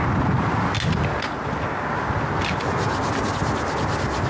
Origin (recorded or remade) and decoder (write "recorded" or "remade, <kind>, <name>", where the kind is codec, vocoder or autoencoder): recorded